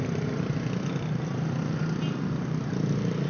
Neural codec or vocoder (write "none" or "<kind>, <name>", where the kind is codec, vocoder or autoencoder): none